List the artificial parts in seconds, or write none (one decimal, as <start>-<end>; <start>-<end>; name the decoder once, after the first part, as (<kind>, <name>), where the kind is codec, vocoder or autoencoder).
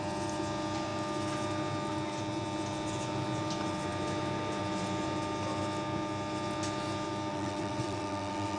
7.3-8.6 (vocoder, WaveNeXt)